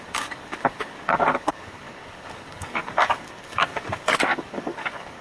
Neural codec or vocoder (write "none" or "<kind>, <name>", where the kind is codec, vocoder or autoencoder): codec, DAC